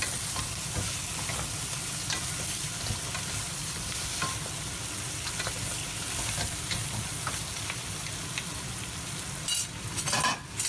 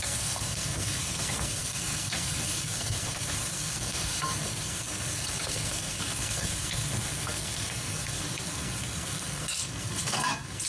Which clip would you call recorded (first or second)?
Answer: first